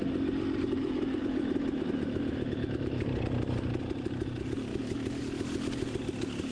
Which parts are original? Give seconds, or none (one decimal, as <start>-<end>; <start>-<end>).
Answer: 0.0-0.8; 3.0-4.7; 5.2-6.5

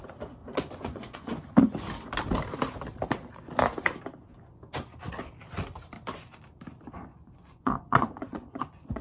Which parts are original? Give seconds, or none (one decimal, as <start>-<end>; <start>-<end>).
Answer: 0.0-0.4; 1.7-7.1

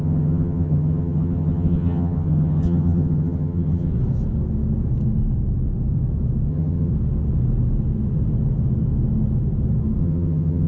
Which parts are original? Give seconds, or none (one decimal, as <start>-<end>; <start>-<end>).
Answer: 3.9-6.5; 6.9-10.0

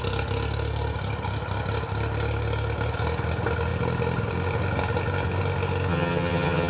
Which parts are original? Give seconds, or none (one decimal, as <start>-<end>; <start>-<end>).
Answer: 0.0-5.9